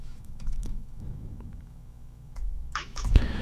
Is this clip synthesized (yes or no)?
yes